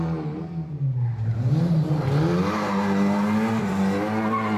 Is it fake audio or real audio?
real